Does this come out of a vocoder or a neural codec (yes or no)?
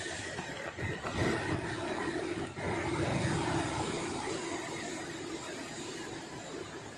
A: no